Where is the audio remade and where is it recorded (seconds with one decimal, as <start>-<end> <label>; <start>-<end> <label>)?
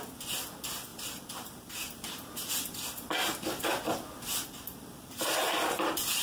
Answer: 0.0-0.9 recorded; 0.9-2.5 remade; 2.5-5.4 recorded; 5.4-6.2 remade